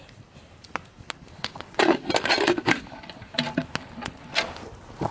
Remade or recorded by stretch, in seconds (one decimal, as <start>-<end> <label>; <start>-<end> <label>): 0.0-1.4 recorded; 1.4-2.1 remade; 2.1-5.1 recorded